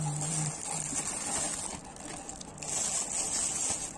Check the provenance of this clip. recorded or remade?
recorded